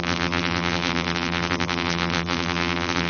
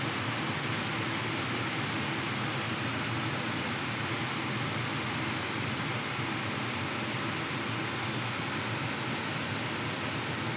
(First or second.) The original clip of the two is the second